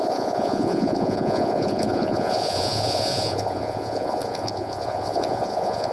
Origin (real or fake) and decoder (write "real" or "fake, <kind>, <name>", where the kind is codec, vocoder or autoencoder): fake, vocoder, Vocos